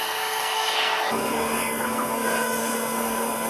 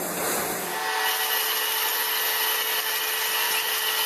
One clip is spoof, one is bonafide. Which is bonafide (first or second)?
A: second